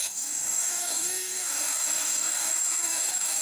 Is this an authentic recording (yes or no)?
no